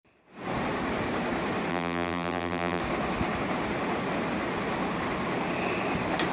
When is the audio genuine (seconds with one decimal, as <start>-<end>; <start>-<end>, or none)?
0.0-1.7; 2.8-6.3